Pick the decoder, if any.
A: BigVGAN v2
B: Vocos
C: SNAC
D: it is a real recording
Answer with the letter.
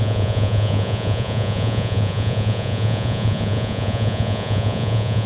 B